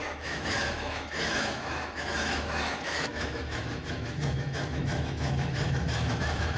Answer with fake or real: fake